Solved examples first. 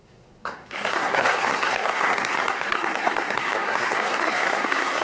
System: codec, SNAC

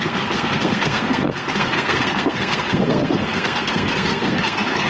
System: codec, SNAC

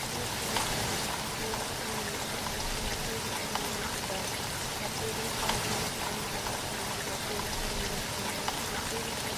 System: none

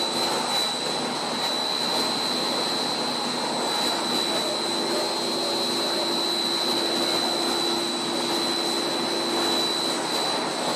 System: none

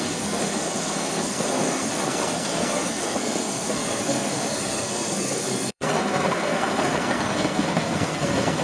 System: codec, SNAC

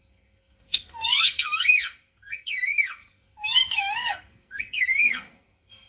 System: codec, SNAC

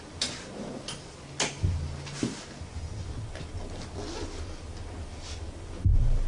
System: none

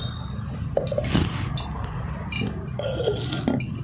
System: none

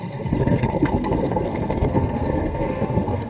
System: codec, SNAC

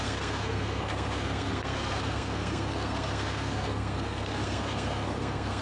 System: codec, SNAC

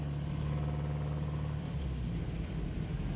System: none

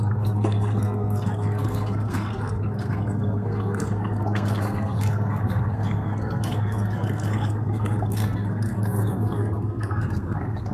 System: codec, SNAC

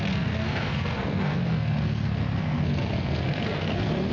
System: codec, SNAC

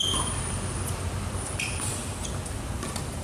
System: none